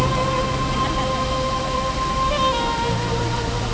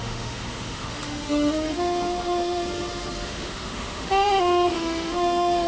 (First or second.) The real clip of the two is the first